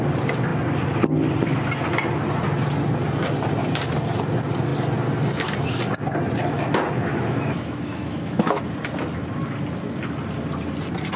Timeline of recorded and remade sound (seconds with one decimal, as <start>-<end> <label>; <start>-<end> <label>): 0.0-7.1 recorded; 7.1-8.6 remade; 8.6-11.2 recorded